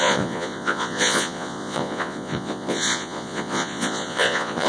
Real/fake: fake